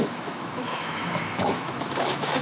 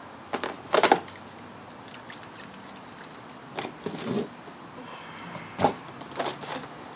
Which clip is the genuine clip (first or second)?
second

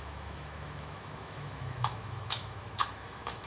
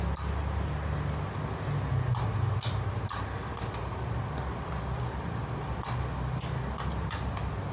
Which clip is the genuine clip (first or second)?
second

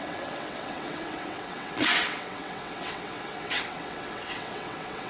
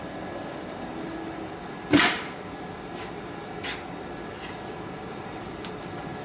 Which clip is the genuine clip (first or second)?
second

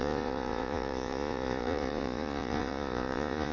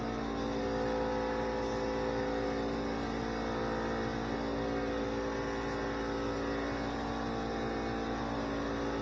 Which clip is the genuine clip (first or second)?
second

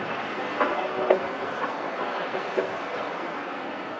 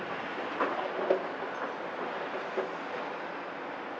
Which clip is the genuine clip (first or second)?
second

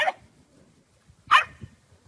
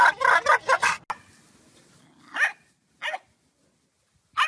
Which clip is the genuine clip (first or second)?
second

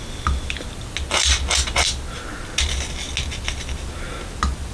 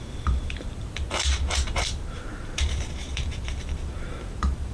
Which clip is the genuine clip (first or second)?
first